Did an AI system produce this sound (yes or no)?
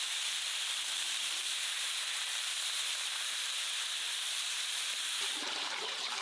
yes